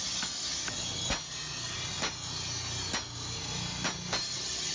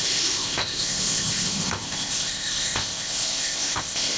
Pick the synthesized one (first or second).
second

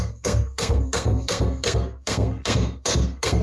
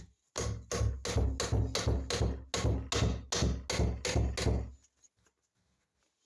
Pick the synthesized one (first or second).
first